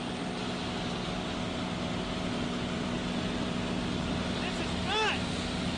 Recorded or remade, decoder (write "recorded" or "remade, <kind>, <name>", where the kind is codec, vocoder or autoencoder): recorded